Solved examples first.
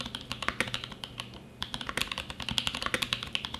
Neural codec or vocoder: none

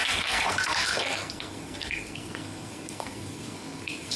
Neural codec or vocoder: codec, SNAC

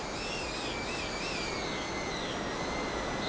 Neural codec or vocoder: none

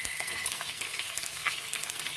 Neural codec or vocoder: codec, SNAC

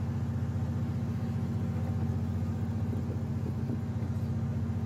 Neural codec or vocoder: none